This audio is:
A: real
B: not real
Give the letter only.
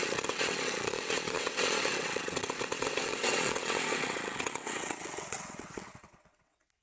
B